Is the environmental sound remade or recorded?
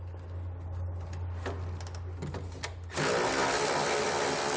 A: recorded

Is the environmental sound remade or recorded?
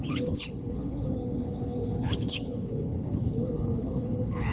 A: remade